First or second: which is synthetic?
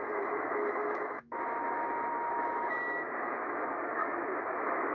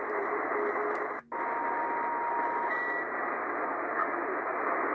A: first